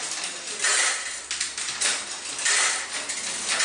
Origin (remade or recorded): recorded